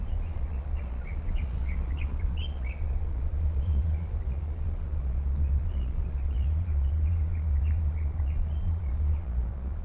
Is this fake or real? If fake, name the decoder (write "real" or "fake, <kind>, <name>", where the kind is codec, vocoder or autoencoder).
fake, vocoder, Vocos